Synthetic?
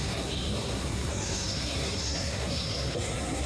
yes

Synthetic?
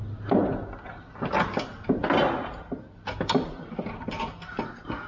no